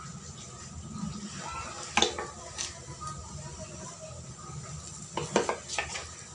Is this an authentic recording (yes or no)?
yes